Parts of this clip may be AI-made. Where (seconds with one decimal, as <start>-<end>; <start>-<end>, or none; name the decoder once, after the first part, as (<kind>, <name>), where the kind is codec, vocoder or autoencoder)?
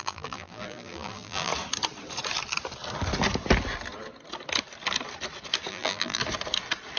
0.0-1.5 (vocoder, BigVGAN v2); 5.7-6.2